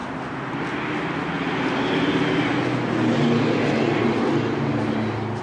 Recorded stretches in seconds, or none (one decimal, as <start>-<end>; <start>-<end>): 0.0-5.4